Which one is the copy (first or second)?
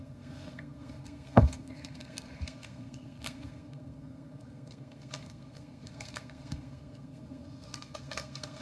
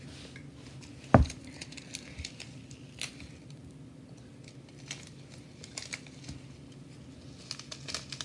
first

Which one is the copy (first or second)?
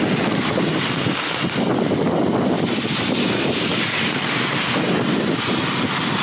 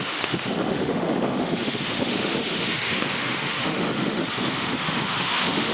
second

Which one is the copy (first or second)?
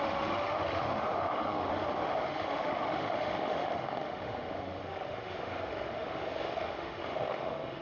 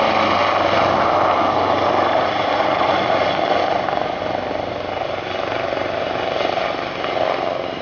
first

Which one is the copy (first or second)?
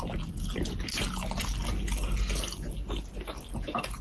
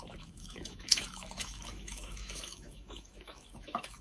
second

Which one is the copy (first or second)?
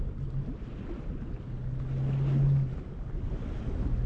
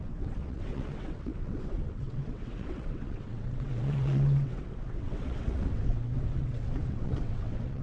second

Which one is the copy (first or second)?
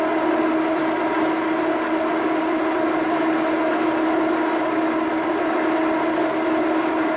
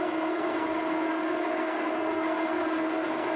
second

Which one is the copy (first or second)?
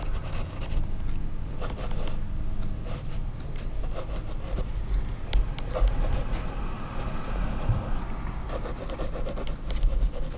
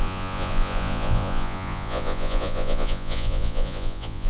second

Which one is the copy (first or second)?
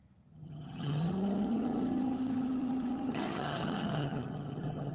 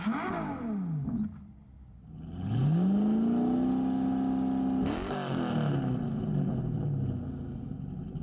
first